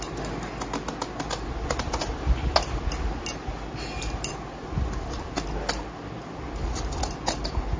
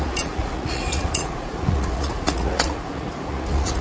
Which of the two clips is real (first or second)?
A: first